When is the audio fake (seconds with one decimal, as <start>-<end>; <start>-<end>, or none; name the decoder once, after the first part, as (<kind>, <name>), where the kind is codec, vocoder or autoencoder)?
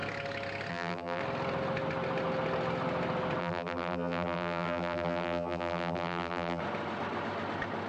0.7-1.2 (vocoder, BigVGAN v2); 3.4-6.6